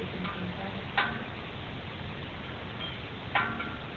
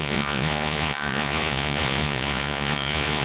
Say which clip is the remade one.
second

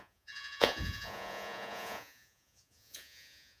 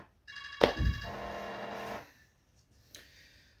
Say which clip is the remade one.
first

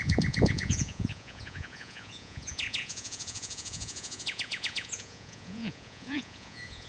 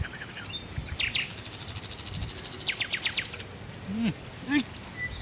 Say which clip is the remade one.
first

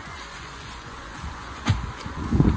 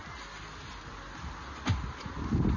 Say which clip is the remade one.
first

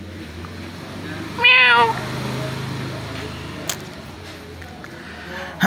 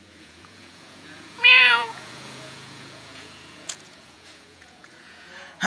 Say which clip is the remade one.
second